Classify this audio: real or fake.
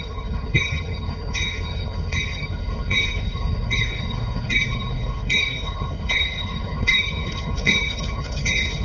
fake